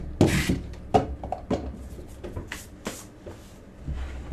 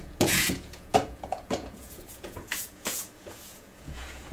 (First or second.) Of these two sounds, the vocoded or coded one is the second